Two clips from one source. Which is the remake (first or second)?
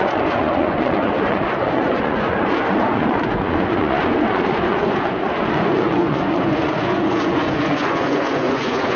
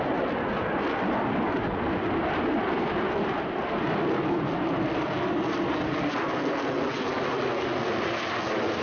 first